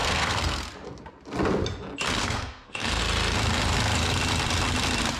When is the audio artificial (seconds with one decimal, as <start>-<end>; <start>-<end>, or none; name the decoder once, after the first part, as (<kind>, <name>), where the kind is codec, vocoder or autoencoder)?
0.0-0.7 (codec, SNAC); 2.2-3.0